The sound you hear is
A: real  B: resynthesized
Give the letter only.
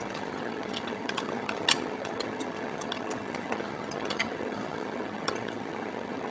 B